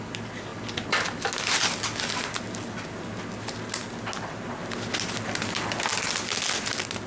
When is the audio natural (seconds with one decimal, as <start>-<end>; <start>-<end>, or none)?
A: 0.0-7.1